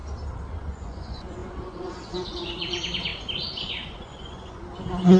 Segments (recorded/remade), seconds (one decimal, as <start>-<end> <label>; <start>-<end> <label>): 0.0-0.5 recorded; 0.5-3.1 remade; 3.1-3.7 recorded; 3.7-5.2 remade